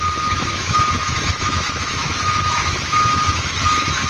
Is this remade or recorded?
remade